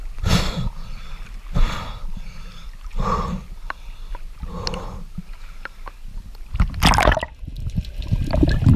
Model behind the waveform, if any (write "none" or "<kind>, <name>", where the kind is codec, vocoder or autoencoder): none